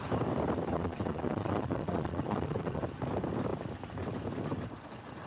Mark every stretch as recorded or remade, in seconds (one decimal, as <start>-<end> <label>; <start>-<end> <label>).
0.0-0.7 recorded; 0.7-2.8 remade; 2.8-5.3 recorded